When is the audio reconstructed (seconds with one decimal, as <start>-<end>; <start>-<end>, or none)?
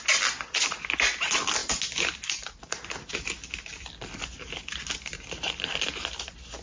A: none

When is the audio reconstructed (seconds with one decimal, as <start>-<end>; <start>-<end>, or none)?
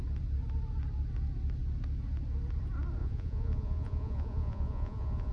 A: 3.0-5.3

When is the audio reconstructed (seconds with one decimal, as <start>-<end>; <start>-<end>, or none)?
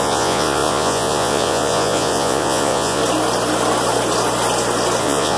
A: 0.0-3.0; 5.0-5.4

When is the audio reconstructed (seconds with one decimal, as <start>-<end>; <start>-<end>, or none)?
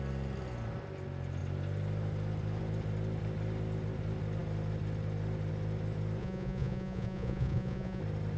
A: 6.2-8.0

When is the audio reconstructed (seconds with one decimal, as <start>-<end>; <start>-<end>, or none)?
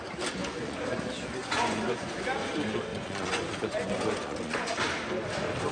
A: 0.4-0.9; 1.4-2.1; 2.9-4.7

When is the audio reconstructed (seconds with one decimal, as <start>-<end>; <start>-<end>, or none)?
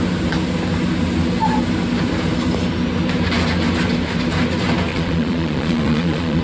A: 4.9-6.4